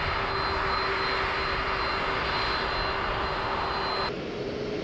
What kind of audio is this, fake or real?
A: real